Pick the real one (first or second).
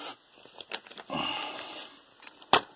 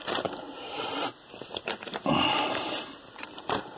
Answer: first